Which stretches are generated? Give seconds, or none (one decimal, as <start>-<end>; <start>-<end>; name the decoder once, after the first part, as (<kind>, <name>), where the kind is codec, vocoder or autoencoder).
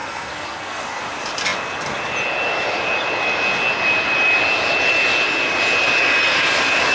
0.0-1.0 (codec, SNAC)